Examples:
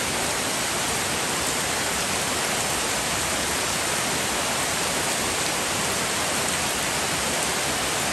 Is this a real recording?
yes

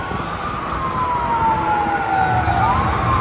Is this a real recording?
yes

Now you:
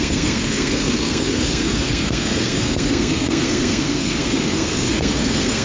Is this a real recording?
no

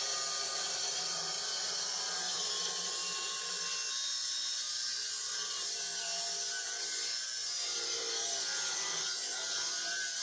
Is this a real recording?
yes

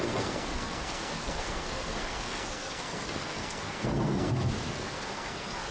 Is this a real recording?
no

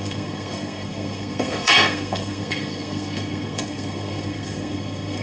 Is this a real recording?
no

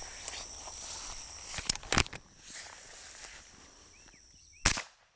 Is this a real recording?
yes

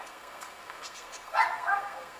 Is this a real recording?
no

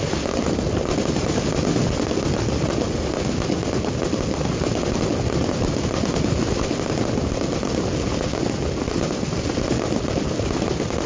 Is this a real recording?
yes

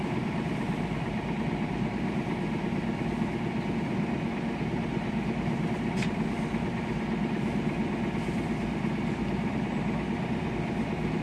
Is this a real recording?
yes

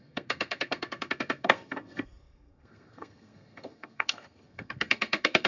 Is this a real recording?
no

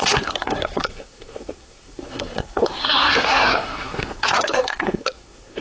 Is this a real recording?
no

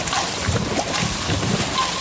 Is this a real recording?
yes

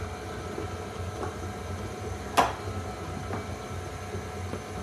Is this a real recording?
yes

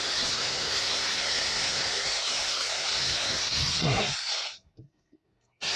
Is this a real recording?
no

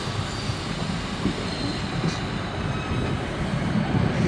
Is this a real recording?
yes